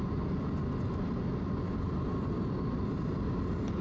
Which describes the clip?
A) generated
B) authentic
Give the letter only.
B